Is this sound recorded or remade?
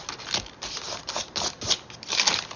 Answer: recorded